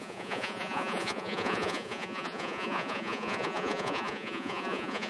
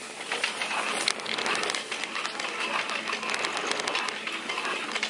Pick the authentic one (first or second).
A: second